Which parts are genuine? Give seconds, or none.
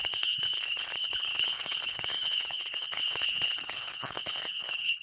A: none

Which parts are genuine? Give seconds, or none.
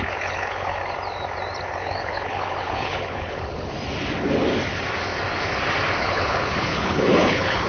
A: 0.8-1.7; 3.7-6.0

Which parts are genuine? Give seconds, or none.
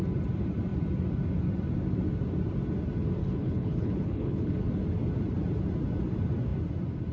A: 0.0-3.2; 4.7-7.1